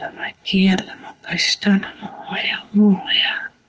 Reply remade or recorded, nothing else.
remade